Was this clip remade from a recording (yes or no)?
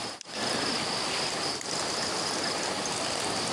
no